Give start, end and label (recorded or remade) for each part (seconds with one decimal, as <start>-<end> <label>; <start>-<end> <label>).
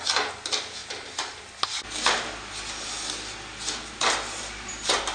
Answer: 0.0-5.1 recorded